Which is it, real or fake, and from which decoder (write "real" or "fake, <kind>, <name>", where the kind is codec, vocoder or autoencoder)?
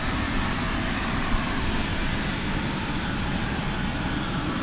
real